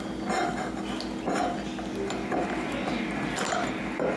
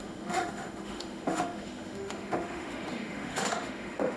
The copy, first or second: second